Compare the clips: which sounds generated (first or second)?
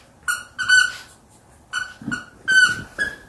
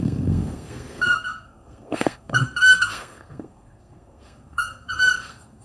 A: second